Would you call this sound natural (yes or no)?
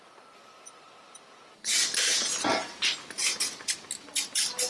yes